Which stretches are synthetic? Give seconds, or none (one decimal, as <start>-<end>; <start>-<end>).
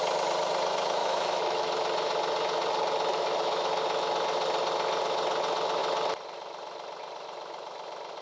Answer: 1.0-1.7; 3.1-3.7